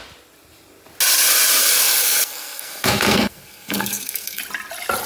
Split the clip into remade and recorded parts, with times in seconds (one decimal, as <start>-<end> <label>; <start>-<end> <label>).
0.0-1.6 recorded; 1.6-4.4 remade; 4.4-5.1 recorded